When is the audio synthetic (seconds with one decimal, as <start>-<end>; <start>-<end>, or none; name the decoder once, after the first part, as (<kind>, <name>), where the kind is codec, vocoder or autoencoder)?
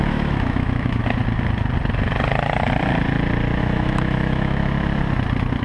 0.0-1.0 (autoencoder, DAC-VAE); 3.6-4.6